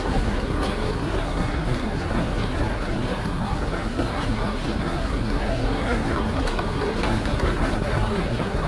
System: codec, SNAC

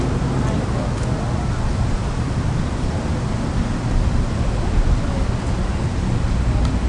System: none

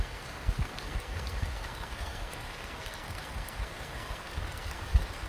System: codec, SNAC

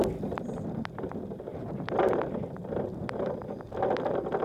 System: none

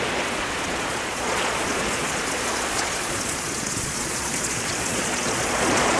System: vocoder, Vocos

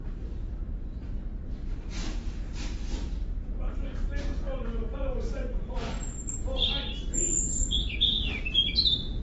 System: none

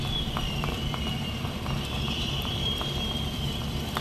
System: vocoder, BigVGAN v2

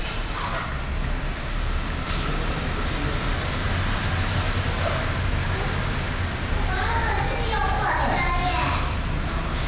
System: none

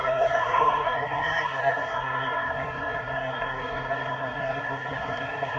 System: codec, SNAC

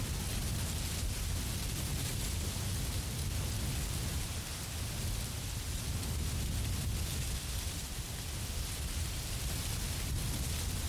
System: none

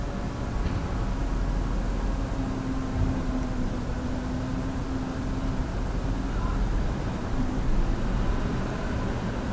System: none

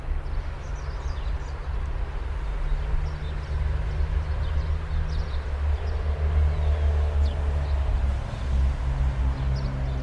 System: none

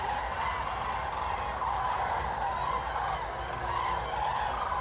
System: none